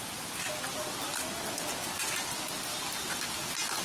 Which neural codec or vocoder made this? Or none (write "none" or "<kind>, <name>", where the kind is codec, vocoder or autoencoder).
none